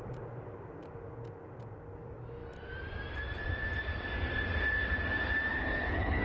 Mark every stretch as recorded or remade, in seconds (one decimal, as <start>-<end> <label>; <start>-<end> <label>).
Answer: 0.0-5.5 recorded; 5.5-6.2 remade